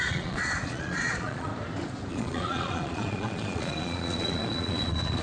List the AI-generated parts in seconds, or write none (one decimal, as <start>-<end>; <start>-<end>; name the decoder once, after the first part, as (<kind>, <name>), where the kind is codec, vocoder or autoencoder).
0.0-1.5 (vocoder, Vocos); 2.1-5.2